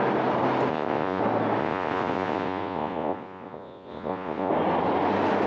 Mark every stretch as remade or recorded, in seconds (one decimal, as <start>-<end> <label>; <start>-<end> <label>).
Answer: 0.0-0.7 recorded; 0.7-1.2 remade; 1.2-1.6 recorded; 1.6-4.5 remade; 4.5-5.5 recorded

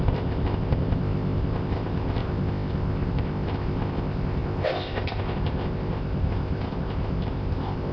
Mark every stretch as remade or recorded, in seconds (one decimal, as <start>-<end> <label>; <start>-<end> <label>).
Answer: 0.0-7.9 remade

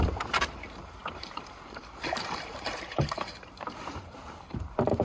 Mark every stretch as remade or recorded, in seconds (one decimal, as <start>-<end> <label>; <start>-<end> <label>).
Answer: 0.0-5.0 remade

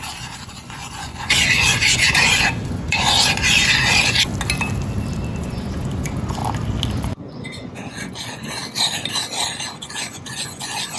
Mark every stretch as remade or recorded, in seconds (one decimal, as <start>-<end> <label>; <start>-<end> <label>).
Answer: 0.0-4.3 remade; 4.3-5.4 recorded; 5.4-6.4 remade; 6.4-7.0 recorded; 7.0-8.6 remade; 8.6-9.8 recorded; 9.8-11.0 remade

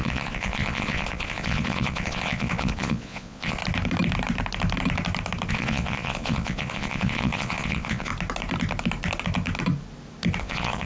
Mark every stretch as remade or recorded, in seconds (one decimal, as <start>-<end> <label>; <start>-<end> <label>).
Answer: 0.0-3.6 remade; 3.6-5.5 recorded; 5.5-8.1 remade; 8.1-10.4 recorded; 10.4-10.9 remade